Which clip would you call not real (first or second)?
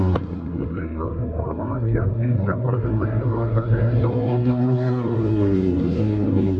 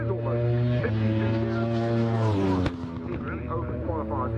first